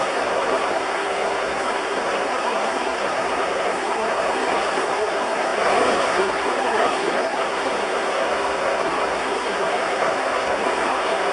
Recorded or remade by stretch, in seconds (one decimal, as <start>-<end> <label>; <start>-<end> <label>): 0.0-11.3 remade